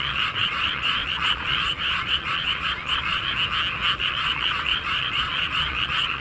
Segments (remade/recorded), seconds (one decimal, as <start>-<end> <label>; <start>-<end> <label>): 0.0-3.3 remade; 3.3-4.0 recorded; 4.0-6.2 remade